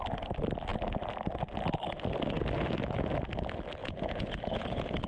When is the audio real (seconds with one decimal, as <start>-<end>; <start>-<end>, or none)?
0.0-3.8